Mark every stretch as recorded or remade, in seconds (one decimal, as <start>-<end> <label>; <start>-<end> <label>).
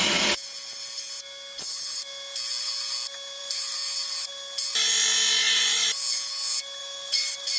0.0-3.4 recorded; 3.4-4.3 remade; 4.3-6.8 recorded; 6.8-7.6 remade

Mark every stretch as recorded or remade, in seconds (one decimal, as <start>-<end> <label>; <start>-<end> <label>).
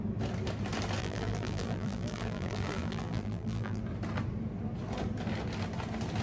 0.0-1.0 recorded; 1.0-3.8 remade; 3.8-6.2 recorded